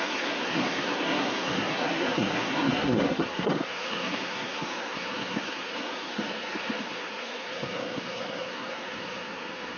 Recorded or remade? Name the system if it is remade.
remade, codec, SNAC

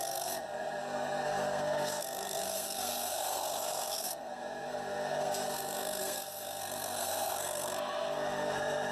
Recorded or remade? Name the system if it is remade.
remade, codec, SNAC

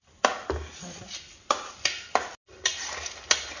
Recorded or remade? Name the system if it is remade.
recorded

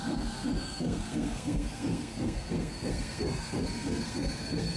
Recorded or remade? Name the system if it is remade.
remade, codec, SNAC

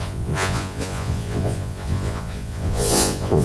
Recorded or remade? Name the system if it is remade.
remade, vocoder, Vocos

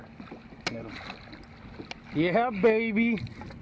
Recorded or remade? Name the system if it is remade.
recorded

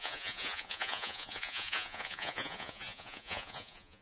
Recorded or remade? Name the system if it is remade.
remade, vocoder, Vocos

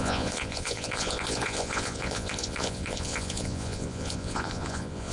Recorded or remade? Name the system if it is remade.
remade, vocoder, Vocos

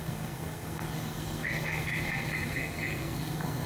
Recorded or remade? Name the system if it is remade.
remade, codec, SNAC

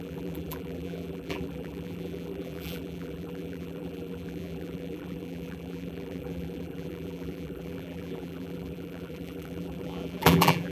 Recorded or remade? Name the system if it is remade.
remade, vocoder, BigVGAN v2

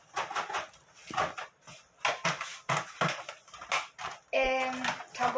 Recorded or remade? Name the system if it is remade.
recorded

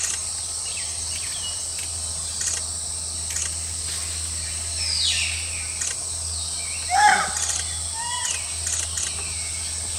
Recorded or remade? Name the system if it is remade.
recorded